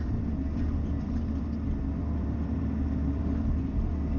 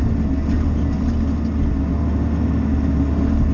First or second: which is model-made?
first